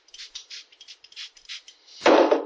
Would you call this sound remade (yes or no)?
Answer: yes